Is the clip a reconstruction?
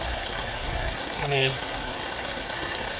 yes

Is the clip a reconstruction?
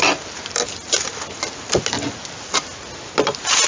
no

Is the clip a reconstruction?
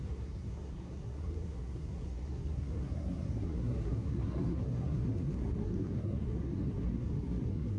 yes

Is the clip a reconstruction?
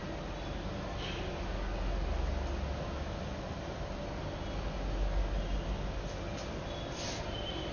no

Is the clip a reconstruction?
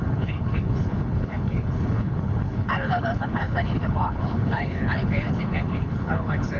yes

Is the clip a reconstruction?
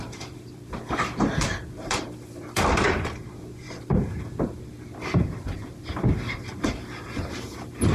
yes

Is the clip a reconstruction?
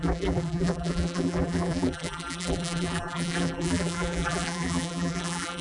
yes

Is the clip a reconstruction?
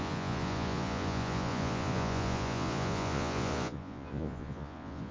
yes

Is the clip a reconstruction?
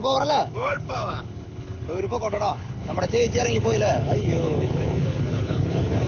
yes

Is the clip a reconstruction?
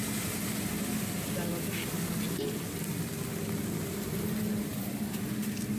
no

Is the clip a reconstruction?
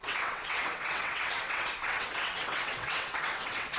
yes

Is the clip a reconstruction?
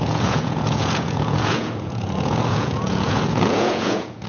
yes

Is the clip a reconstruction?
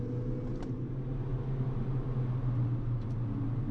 no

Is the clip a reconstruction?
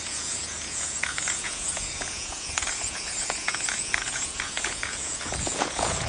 yes